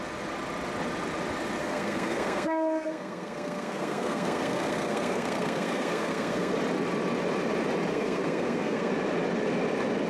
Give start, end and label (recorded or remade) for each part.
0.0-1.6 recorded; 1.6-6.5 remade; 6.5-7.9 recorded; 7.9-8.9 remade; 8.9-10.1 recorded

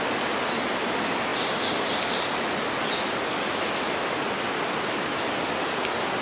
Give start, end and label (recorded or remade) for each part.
0.0-6.2 recorded

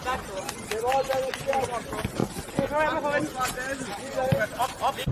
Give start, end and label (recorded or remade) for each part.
0.0-5.1 recorded

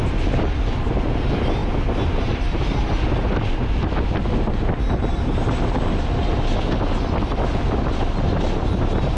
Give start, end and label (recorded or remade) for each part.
0.0-9.2 recorded

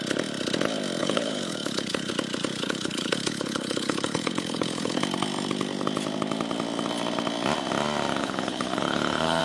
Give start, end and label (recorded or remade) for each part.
0.0-1.0 recorded; 1.0-2.1 remade; 2.1-2.5 recorded; 2.5-5.0 remade; 5.0-8.2 recorded; 8.2-9.4 remade